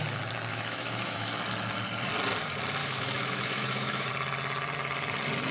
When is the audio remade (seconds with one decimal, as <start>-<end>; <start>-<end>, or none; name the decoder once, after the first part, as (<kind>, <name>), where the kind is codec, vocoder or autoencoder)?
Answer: 0.5-1.3 (autoencoder, DAC-VAE); 2.8-4.1